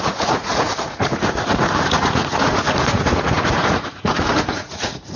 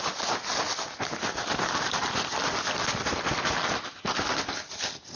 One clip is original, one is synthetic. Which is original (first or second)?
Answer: second